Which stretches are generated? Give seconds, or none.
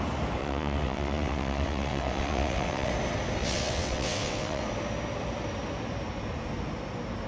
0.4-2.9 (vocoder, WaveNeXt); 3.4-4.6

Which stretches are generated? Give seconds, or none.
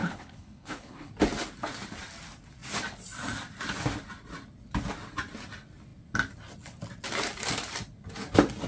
0.0-1.1 (codec, HILCodec)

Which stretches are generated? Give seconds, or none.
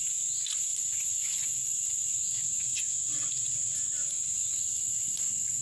0.0-5.6 (vocoder, Vocos)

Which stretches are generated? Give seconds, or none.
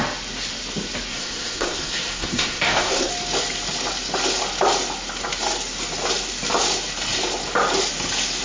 1.1-3.1 (codec, SNAC)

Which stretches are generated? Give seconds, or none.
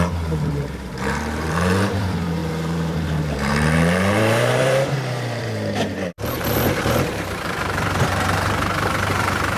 0.0-9.6 (vocoder, BigVGAN v2)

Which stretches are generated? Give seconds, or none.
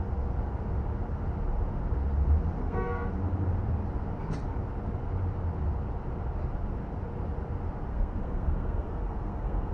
2.6-3.1 (codec, SNAC); 7.9-9.7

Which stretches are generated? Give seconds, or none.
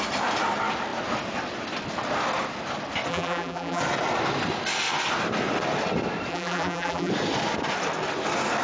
3.1-3.8 (vocoder, BigVGAN v2); 6.3-7.1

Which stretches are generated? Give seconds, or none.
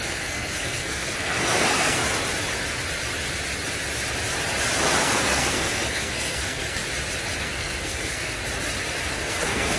0.0-2.0 (codec, SNAC); 5.0-6.8; 7.4-8.4; 9.1-9.8